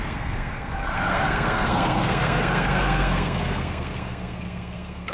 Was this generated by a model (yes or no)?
yes